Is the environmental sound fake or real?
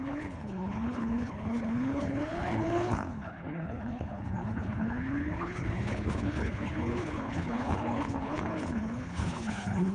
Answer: fake